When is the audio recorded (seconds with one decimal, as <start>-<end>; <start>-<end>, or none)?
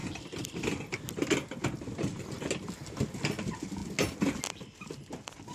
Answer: 0.0-5.5